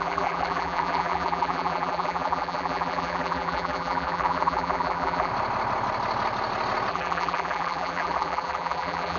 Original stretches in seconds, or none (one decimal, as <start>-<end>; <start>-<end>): 5.3-6.9